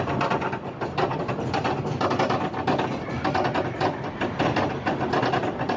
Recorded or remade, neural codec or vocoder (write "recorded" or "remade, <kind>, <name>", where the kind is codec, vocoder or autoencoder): recorded